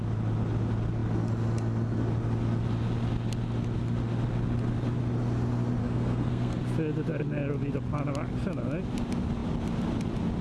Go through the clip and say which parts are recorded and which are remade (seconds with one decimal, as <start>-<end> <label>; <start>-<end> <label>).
0.0-5.8 recorded; 5.8-6.6 remade; 6.6-10.4 recorded